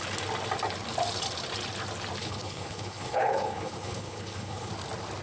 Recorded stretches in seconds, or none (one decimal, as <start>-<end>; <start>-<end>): 0.0-2.2; 4.7-5.2